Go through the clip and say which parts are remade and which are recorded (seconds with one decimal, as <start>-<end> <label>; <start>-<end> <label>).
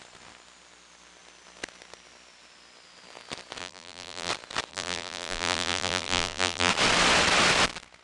0.0-3.6 recorded; 3.6-4.3 remade; 4.3-4.7 recorded; 4.7-6.7 remade; 6.7-8.0 recorded